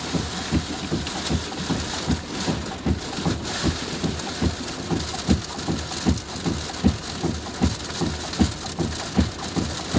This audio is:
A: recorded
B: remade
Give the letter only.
A